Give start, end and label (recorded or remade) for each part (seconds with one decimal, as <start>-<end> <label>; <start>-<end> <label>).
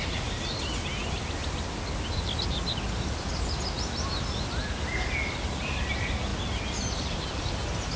0.0-8.0 recorded